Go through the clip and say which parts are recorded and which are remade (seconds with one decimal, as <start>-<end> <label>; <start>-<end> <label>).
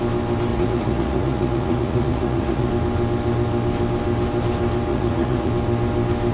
0.0-0.5 recorded; 0.5-2.7 remade; 2.7-4.9 recorded; 4.9-5.5 remade; 5.5-6.3 recorded